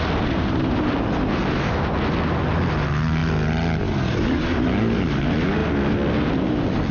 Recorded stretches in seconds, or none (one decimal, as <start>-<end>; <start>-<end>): 0.0-6.9